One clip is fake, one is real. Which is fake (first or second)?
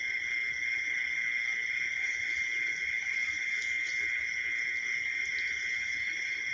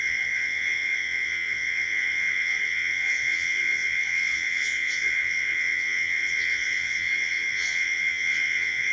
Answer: second